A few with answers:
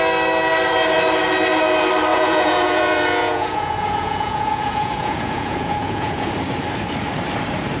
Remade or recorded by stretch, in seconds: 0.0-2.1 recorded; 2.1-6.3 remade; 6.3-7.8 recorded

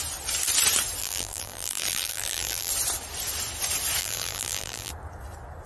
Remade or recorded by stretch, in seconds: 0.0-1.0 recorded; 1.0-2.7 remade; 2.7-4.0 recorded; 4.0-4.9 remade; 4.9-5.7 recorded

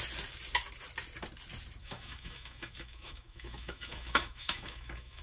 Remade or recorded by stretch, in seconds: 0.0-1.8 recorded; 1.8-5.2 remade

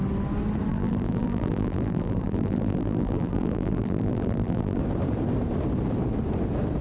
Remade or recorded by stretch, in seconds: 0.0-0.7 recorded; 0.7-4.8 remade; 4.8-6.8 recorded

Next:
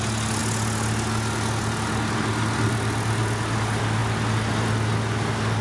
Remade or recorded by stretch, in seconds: 0.0-5.6 recorded